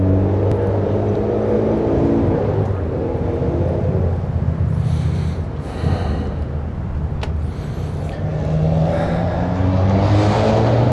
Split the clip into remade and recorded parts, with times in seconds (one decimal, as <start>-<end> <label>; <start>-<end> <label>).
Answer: 0.0-10.9 recorded